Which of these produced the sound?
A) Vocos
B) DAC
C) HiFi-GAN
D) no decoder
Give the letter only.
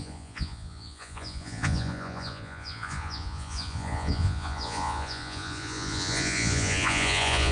A